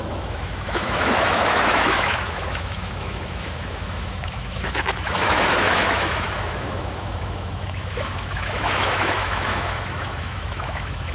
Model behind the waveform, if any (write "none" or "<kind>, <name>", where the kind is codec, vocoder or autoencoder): autoencoder, DAC-VAE